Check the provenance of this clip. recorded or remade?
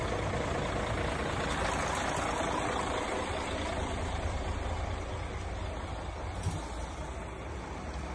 recorded